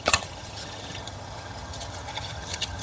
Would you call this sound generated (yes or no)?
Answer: yes